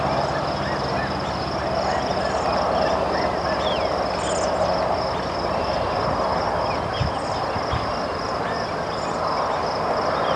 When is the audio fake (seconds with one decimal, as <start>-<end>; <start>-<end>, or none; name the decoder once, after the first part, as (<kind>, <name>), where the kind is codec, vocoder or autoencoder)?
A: none